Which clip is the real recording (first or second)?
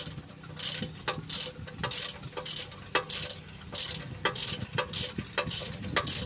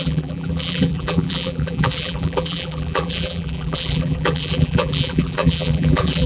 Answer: first